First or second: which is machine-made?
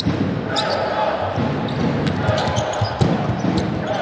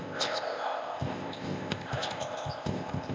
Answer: second